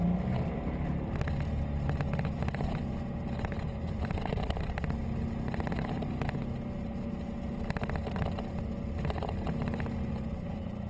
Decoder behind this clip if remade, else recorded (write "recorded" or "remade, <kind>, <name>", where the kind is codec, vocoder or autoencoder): recorded